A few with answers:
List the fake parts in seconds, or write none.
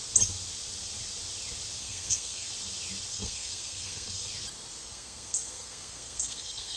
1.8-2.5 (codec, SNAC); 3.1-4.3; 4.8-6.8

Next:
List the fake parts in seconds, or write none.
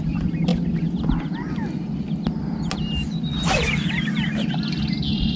none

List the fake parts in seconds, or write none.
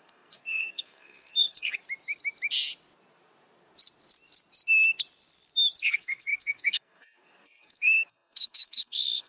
0.0-1.8 (codec, SNAC); 5.8-9.3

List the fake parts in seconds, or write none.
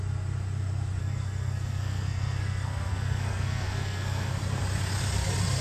1.0-4.4 (codec, SNAC)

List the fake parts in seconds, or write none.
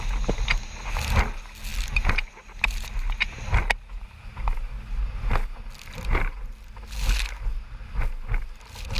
none